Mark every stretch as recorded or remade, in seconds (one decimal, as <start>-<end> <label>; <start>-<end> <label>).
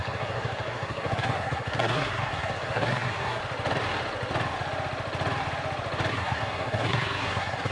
0.0-3.4 remade; 3.4-6.1 recorded; 6.1-7.7 remade